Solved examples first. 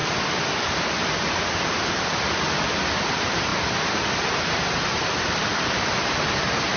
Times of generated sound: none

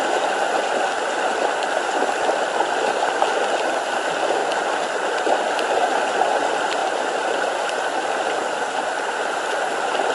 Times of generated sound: none

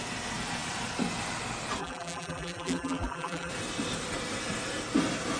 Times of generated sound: 1.8-3.5 (vocoder, BigVGAN v2)

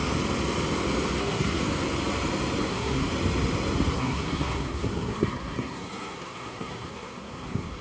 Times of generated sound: 1.2-1.6 (codec, SNAC); 2.7-3.1; 3.9-7.8

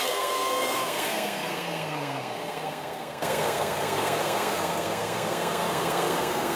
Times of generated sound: 0.0-6.6 (codec, SNAC)

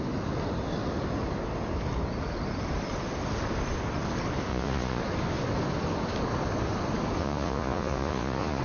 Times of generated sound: 4.5-5.0 (vocoder, Vocos); 7.2-8.6

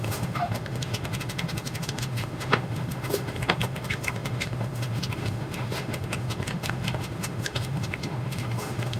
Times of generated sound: 0.0-9.0 (autoencoder, DAC-VAE)

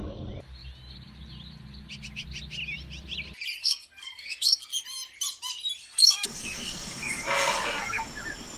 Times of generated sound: 3.6-4.6 (codec, SNAC); 5.8-8.0